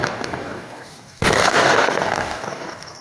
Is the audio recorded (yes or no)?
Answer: no